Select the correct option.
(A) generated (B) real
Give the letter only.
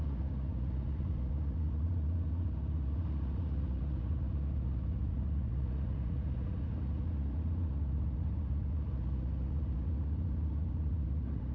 A